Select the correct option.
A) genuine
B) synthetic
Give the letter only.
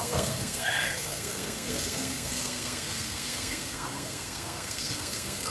B